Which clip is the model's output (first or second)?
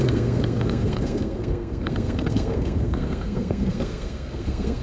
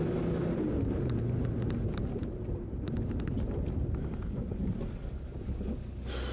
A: first